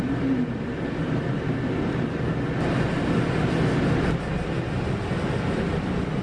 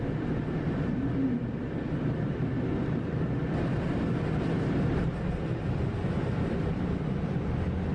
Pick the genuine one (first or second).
first